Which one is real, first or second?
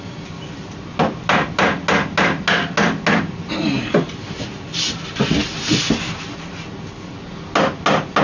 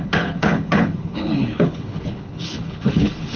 first